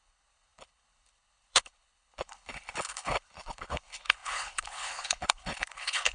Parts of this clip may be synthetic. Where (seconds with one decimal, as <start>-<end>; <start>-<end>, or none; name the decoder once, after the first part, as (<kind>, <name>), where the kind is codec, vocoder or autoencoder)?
0.0-6.1 (codec, HILCodec)